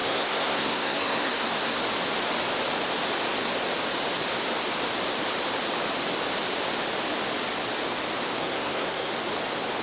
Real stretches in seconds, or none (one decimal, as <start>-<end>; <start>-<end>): 1.8-8.4; 9.1-9.8